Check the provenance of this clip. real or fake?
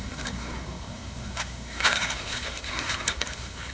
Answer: fake